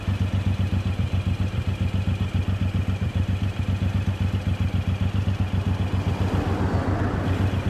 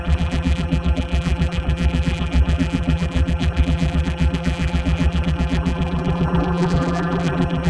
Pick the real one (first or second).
first